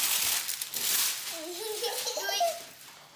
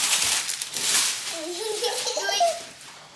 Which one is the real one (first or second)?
first